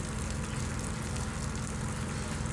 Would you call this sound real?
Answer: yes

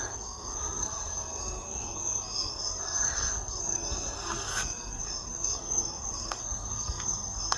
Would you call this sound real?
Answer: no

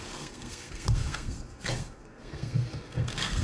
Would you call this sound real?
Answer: no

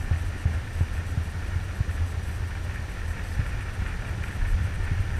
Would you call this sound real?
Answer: yes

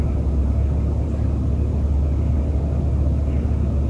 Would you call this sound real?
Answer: yes